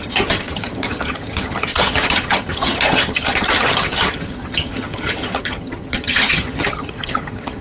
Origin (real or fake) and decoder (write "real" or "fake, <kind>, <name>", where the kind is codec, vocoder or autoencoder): fake, vocoder, HiFi-GAN